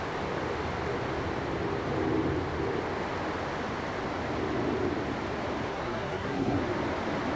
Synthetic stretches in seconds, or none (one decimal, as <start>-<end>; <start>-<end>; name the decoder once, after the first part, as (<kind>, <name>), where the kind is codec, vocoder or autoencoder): 5.7-6.6 (codec, SNAC)